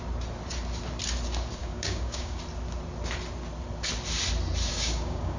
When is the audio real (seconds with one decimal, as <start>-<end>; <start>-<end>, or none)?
0.0-1.6; 2.4-4.7